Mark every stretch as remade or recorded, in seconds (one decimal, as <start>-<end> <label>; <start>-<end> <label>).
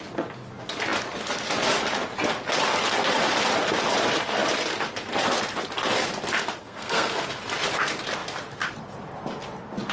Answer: 0.0-6.6 recorded; 6.6-7.1 remade; 7.1-9.9 recorded